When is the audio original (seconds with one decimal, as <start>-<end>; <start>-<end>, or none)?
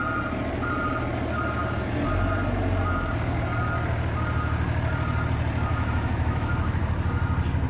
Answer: 0.0-5.7; 6.8-7.7